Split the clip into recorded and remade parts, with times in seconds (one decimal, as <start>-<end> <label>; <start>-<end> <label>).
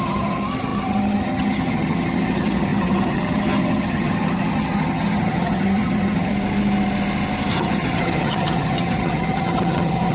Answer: 0.0-6.3 remade; 6.3-7.5 recorded; 7.5-10.1 remade